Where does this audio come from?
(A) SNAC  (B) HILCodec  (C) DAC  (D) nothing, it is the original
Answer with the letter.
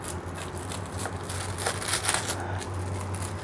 D